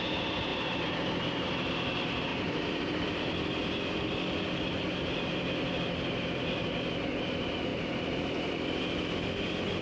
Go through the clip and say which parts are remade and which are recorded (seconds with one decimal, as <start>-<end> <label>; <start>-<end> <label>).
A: 0.0-0.5 recorded; 0.5-1.7 remade; 1.7-2.3 recorded; 2.3-3.2 remade; 3.2-7.7 recorded; 7.7-8.8 remade; 8.8-9.8 recorded